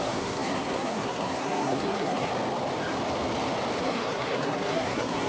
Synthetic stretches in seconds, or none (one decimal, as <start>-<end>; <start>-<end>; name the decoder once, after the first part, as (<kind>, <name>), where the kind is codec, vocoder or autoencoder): 0.0-2.3 (codec, SNAC); 3.8-5.3